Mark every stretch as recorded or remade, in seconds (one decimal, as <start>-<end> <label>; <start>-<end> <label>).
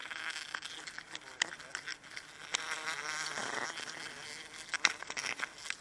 0.0-5.8 recorded